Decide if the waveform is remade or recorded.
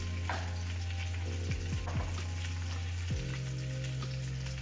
recorded